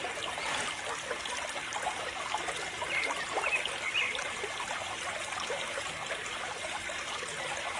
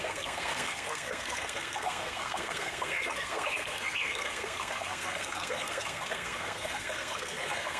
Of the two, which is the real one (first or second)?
first